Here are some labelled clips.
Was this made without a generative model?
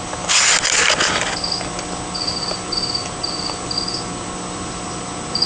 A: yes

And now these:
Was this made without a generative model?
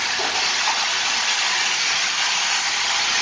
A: yes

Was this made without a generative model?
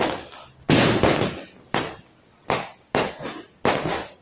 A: yes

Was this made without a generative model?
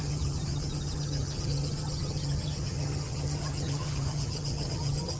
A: no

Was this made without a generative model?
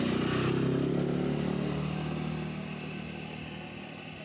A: yes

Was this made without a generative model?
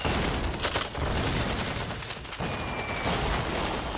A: yes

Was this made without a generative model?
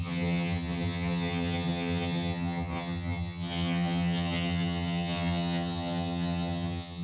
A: no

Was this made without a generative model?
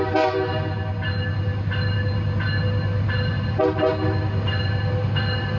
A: yes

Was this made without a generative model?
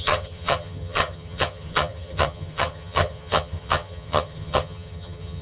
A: no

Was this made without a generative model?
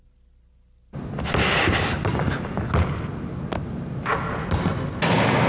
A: yes